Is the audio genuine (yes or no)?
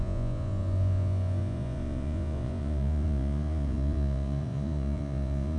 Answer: no